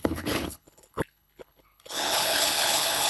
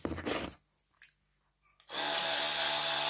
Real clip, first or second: second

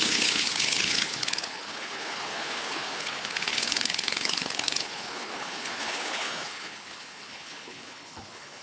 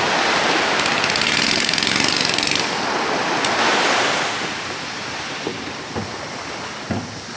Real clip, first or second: second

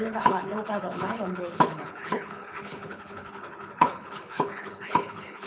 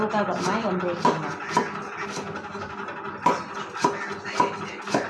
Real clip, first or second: second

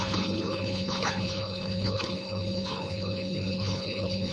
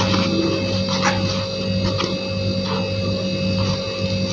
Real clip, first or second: second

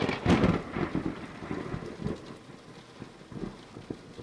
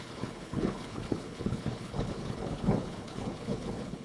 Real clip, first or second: first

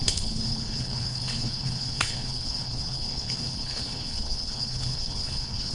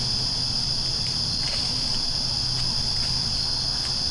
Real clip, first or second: second